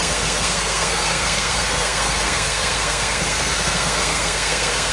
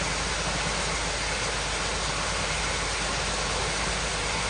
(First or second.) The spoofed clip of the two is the first